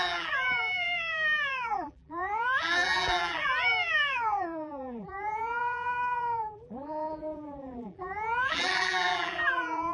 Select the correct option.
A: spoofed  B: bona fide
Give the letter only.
A